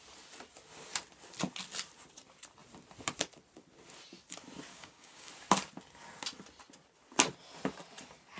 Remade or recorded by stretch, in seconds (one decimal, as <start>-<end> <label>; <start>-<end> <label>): 0.0-4.7 recorded; 4.7-5.3 remade; 5.3-8.4 recorded